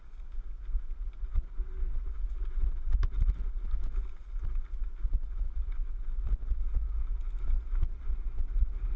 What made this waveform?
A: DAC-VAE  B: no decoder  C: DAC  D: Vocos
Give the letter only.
B